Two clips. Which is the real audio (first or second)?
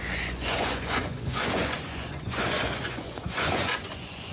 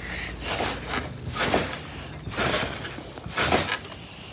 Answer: second